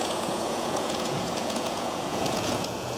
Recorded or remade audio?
remade